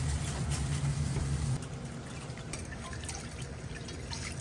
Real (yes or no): no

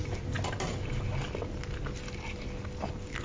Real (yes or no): yes